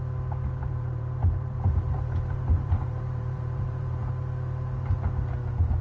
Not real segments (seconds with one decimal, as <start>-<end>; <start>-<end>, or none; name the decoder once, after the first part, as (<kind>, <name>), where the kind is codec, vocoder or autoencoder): 0.6-4.1 (vocoder, BigVGAN v2)